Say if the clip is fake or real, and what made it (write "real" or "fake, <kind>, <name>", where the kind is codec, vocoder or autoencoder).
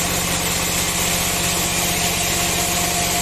real